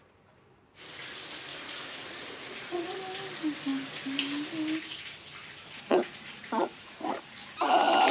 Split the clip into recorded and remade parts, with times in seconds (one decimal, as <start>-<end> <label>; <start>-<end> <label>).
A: 0.0-1.5 recorded; 1.5-3.0 remade; 3.0-6.4 recorded; 6.4-7.2 remade; 7.2-8.1 recorded